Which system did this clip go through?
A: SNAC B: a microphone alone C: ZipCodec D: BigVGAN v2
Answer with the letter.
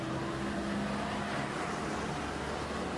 B